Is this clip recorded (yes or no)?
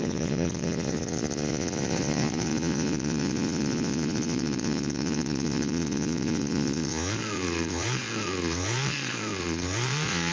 no